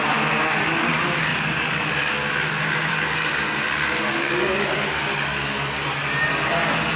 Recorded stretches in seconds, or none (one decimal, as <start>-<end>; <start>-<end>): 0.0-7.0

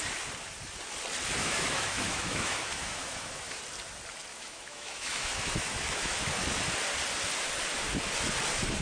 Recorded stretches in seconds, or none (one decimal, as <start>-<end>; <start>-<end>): 0.0-1.4; 3.6-4.3; 6.1-8.8

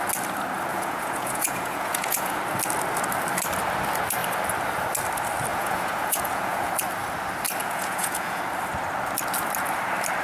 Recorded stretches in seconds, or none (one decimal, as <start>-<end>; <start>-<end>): 0.0-0.7; 2.4-5.5; 6.7-7.6; 8.4-10.2

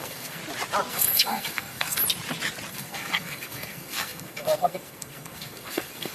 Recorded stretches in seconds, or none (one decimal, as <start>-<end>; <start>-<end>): 0.4-0.9; 2.0-2.7

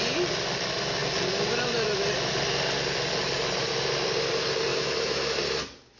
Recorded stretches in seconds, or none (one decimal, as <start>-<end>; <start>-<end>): 0.0-4.7; 5.4-6.0